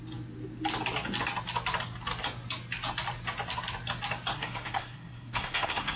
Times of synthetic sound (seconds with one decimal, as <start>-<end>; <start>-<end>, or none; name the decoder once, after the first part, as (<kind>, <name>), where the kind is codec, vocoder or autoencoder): 4.3-6.0 (codec, SNAC)